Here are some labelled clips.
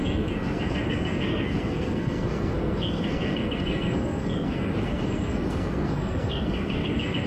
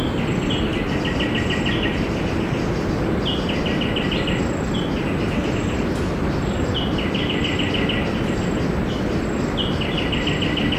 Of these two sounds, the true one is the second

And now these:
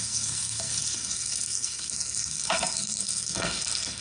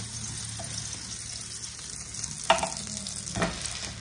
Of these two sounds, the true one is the second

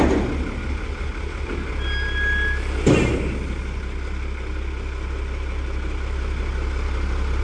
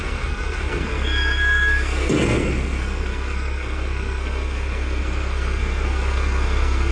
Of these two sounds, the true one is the first